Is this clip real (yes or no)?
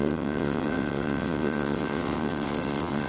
no